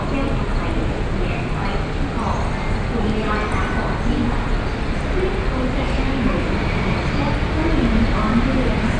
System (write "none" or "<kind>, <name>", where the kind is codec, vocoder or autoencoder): none